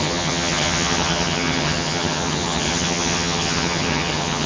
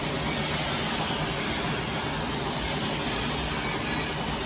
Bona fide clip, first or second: second